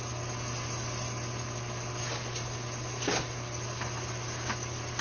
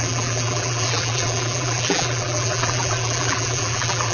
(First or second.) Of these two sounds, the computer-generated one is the second